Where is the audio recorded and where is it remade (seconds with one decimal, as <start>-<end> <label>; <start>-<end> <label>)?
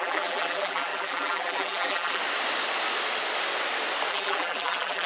0.0-2.2 remade; 2.2-4.1 recorded; 4.1-5.1 remade